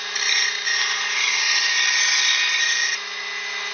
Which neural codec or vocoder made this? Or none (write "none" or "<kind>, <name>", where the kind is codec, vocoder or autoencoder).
none